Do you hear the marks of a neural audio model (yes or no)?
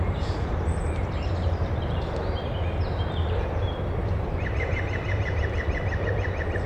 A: yes